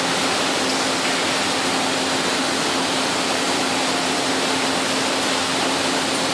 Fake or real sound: real